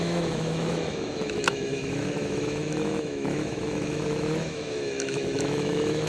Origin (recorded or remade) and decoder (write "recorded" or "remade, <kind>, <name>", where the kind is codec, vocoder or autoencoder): remade, autoencoder, DAC-VAE